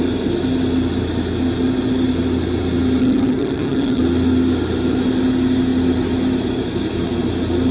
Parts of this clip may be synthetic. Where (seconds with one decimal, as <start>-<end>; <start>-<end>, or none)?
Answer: 3.0-4.0

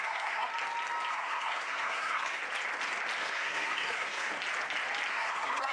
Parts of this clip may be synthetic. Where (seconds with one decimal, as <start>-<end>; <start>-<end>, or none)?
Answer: 0.0-0.5; 1.1-2.4; 3.2-4.3; 5.1-5.7

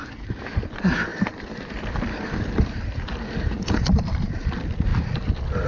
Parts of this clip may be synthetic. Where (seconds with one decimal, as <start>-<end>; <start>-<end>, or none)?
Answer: 1.1-4.5; 4.9-5.7

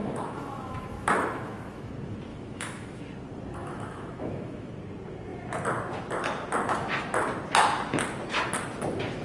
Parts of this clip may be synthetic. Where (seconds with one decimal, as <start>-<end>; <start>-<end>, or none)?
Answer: 0.0-1.9; 2.3-3.0; 3.6-4.7